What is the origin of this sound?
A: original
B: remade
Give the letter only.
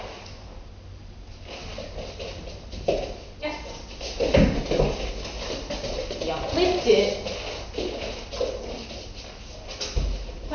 A